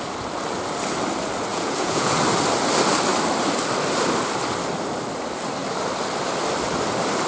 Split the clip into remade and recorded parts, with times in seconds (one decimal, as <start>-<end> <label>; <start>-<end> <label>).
0.0-1.5 recorded; 1.5-2.2 remade; 2.2-7.3 recorded